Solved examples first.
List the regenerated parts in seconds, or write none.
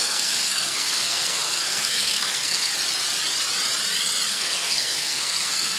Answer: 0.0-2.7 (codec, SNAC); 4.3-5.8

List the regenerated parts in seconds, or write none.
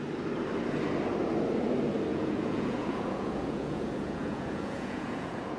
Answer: 2.1-5.6 (vocoder, Vocos)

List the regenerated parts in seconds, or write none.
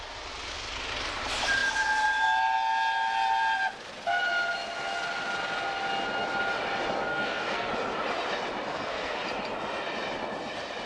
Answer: 7.1-7.7 (codec, SNAC); 8.7-9.2